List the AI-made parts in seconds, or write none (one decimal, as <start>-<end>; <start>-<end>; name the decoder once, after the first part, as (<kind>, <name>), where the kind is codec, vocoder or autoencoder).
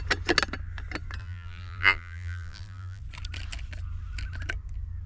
1.2-3.0 (vocoder, BigVGAN v2)